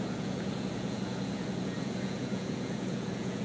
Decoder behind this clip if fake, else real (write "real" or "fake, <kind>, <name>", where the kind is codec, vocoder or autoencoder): fake, vocoder, Vocos